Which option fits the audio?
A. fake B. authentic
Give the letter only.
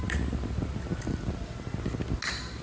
B